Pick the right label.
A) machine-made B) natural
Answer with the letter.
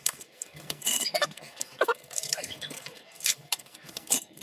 A